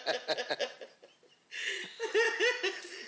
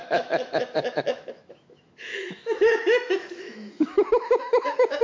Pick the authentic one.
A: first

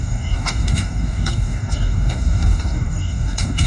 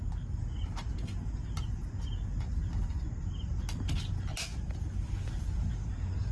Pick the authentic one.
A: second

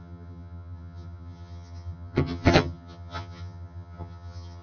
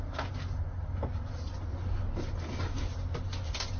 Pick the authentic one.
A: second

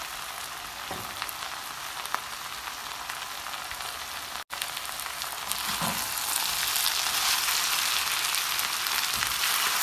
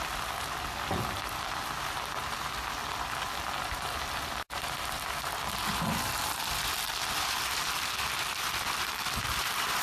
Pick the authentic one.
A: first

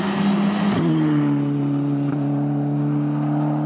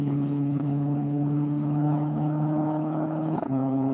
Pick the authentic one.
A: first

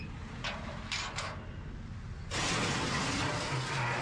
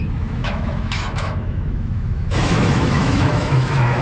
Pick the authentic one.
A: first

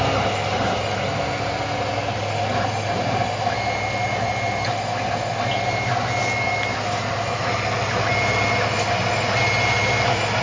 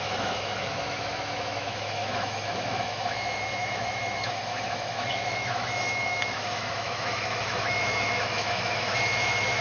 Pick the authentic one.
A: first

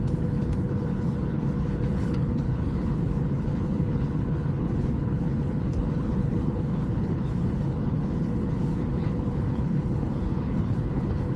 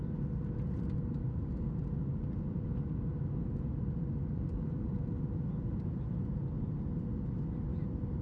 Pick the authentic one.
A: second